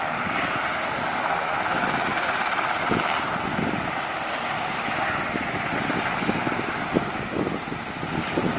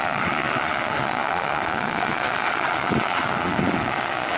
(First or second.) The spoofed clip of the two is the second